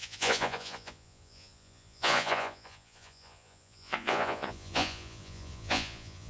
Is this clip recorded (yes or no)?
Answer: no